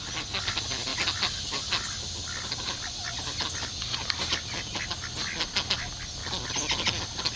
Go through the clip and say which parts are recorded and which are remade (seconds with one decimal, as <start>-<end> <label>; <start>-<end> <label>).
0.0-7.4 recorded